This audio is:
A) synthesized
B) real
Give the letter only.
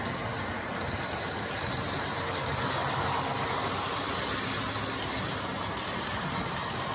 B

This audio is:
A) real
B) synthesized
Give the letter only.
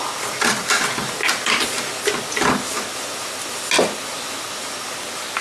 A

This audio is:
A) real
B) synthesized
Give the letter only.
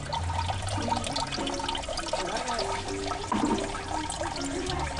A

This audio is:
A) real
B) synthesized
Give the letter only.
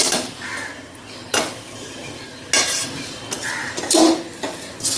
A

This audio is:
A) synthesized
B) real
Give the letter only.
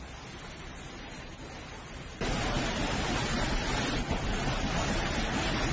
B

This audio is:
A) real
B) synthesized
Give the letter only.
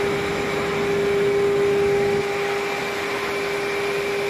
A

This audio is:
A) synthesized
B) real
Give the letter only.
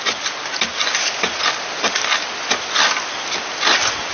B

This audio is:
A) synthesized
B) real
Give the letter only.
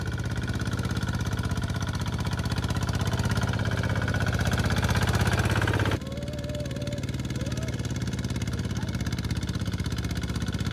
B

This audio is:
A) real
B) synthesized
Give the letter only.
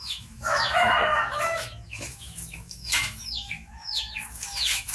B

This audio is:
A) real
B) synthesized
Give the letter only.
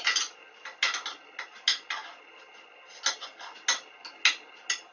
A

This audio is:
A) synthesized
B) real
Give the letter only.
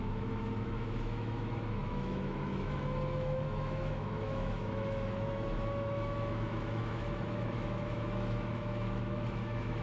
A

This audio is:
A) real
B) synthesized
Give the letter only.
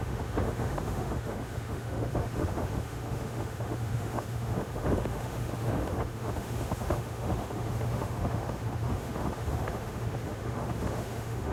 B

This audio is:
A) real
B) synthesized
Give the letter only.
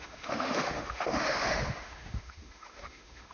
B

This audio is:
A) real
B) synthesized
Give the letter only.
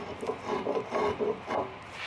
A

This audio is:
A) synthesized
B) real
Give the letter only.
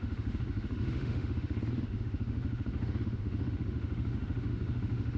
A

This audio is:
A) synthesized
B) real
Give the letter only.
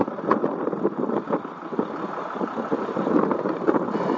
B